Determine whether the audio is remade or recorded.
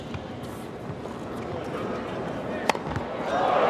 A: recorded